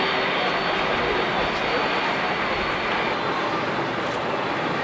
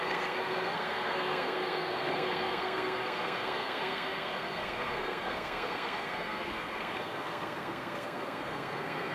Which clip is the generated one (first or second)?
second